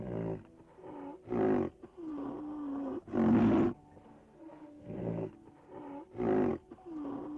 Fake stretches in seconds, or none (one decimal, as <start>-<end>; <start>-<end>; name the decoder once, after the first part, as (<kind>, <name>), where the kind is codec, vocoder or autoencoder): 4.1-5.3 (codec, SNAC)